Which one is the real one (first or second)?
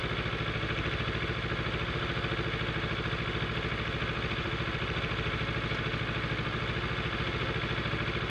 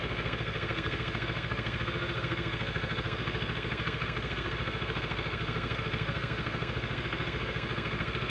first